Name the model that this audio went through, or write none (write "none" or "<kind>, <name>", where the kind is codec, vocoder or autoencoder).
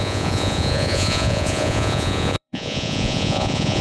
vocoder, Vocos